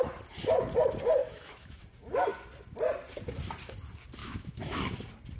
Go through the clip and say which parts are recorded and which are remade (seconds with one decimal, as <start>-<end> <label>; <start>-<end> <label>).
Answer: 0.0-1.2 recorded; 1.2-1.8 remade; 1.8-4.2 recorded; 4.2-4.8 remade; 4.8-5.4 recorded